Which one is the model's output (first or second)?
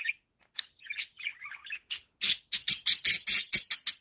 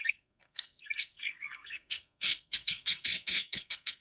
second